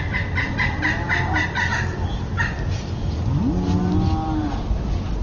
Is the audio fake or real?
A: real